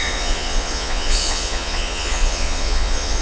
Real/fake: fake